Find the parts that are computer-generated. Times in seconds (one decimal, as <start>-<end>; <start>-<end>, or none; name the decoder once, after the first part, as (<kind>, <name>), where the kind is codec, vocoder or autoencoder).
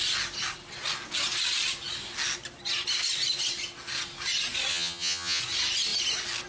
4.7-5.4 (vocoder, HiFi-GAN)